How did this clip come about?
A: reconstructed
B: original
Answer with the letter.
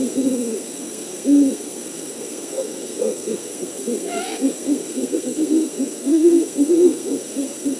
A